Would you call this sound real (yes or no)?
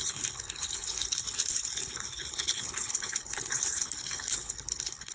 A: no